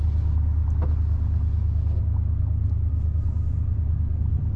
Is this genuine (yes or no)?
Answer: yes